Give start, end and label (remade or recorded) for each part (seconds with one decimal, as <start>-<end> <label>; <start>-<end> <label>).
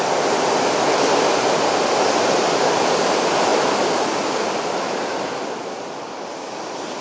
0.0-7.0 recorded